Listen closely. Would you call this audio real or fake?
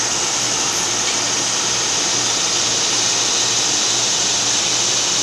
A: real